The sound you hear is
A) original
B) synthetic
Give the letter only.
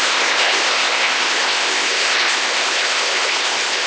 B